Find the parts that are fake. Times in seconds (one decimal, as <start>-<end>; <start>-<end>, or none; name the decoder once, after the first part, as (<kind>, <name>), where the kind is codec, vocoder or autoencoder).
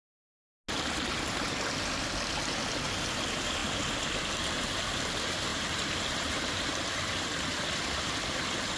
5.5-6.5 (vocoder, BigVGAN v2)